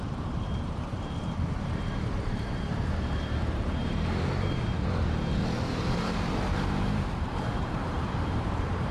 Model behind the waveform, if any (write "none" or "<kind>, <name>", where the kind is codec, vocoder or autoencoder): vocoder, BigVGAN v2